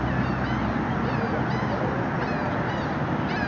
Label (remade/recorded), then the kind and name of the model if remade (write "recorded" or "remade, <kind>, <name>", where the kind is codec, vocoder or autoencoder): recorded